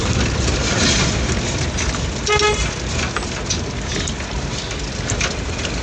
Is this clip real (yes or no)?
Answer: yes